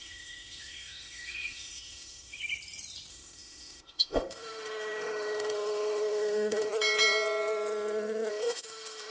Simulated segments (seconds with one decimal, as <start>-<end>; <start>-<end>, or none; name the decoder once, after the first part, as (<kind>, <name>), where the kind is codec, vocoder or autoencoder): 0.0-2.4 (autoencoder, DAC-VAE); 3.1-6.7; 8.3-9.1